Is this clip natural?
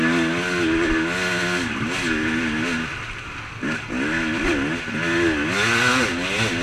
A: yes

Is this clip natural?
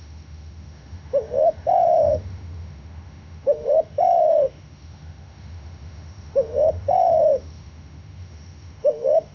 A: no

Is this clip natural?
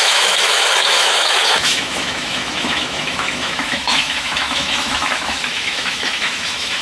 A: no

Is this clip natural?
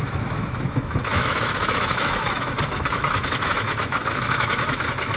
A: no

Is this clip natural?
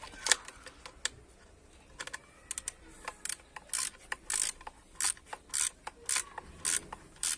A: yes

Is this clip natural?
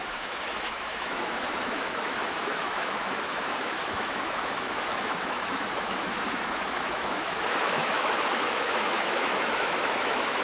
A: no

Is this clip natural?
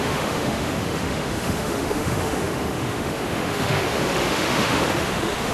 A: no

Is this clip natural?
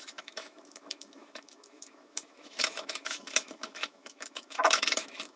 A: no